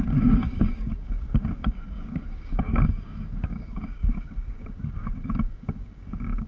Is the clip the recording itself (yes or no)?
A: no